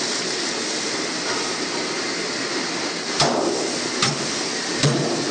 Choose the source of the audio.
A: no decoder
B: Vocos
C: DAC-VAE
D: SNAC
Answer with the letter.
A